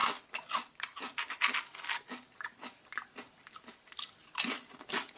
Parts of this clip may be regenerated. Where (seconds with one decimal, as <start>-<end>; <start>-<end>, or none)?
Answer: none